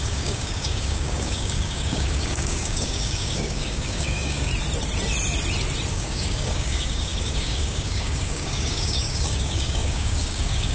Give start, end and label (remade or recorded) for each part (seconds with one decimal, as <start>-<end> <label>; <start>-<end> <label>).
0.0-4.5 remade; 4.5-5.9 recorded; 5.9-10.7 remade